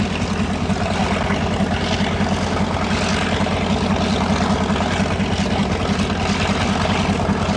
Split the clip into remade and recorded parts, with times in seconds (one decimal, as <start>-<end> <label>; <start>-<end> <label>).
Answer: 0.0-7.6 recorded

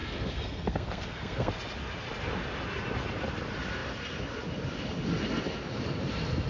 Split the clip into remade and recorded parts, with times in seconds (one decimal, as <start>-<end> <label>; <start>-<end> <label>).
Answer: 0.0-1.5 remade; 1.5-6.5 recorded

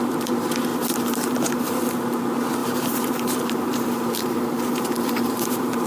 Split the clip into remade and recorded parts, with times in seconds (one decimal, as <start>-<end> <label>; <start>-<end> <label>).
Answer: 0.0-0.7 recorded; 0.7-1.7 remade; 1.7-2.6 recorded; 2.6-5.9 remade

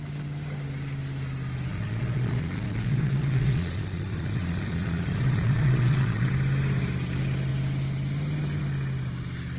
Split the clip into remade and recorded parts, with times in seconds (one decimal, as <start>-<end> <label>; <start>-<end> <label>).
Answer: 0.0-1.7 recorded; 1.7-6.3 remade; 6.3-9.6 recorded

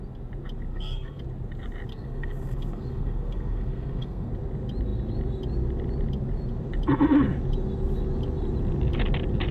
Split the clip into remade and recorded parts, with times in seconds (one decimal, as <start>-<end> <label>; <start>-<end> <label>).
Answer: 0.0-0.7 recorded; 0.7-1.2 remade; 1.2-1.9 recorded; 1.9-4.3 remade; 4.3-9.5 recorded